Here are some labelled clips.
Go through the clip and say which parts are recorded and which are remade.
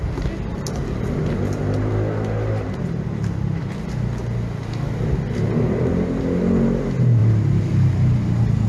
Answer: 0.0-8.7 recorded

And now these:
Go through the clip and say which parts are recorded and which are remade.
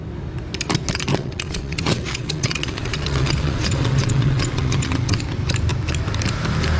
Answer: 0.0-1.1 recorded; 1.1-5.2 remade; 5.2-6.8 recorded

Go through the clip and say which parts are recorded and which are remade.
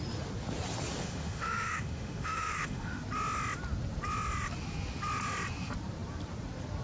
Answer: 0.0-1.0 recorded; 1.0-3.0 remade; 3.0-6.8 recorded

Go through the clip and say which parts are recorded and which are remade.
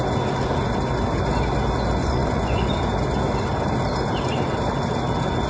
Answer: 0.0-2.0 recorded; 2.0-2.7 remade; 2.7-5.5 recorded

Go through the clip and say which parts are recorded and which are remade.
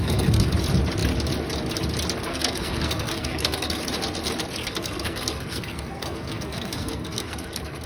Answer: 0.0-0.5 remade; 0.5-2.3 recorded; 2.3-3.8 remade; 3.8-4.6 recorded; 4.6-7.9 remade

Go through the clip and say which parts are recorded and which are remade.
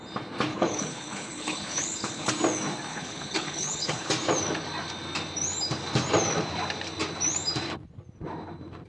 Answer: 0.0-0.5 recorded; 0.5-2.3 remade; 2.3-2.9 recorded; 2.9-4.1 remade; 4.1-8.9 recorded